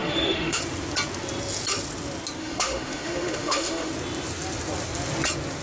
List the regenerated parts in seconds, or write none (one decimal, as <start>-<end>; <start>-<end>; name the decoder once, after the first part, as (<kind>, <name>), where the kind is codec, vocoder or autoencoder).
0.0-0.6 (autoencoder, DAC-VAE); 2.4-3.9